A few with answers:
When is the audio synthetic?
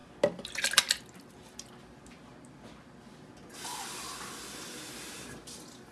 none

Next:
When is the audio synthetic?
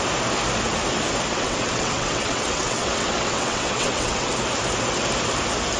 1.3-4.3 (vocoder, WaveNeXt)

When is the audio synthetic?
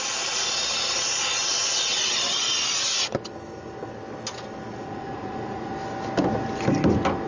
4.7-5.7 (vocoder, Vocos)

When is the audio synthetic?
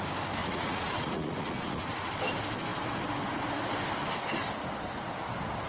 0.4-2.1 (vocoder, Vocos)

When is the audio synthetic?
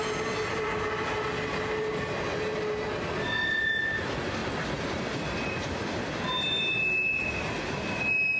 4.4-5.0 (vocoder, BigVGAN v2)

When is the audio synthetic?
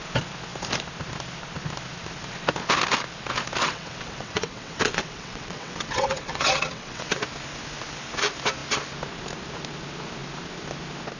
3.6-7.2 (vocoder, WaveNeXt)